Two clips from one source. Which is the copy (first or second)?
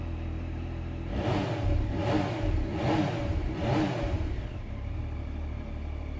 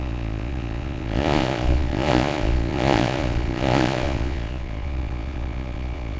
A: second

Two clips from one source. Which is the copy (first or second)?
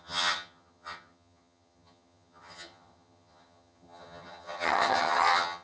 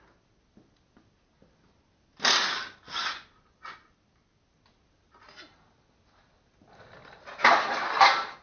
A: first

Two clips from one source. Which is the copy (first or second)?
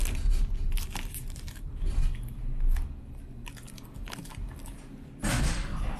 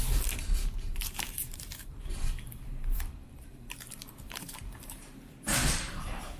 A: second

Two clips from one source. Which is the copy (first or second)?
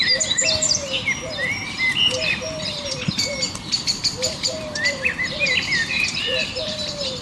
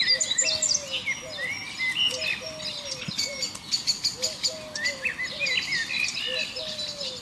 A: first